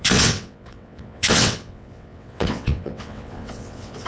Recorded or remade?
remade